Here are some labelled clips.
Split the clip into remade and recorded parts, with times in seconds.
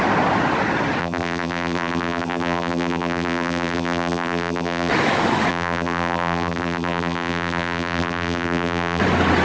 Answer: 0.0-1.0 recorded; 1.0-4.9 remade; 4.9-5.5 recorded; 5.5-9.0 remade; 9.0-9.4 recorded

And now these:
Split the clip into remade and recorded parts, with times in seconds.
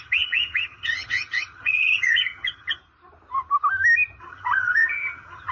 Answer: 0.0-2.8 remade; 2.8-4.2 recorded; 4.2-5.5 remade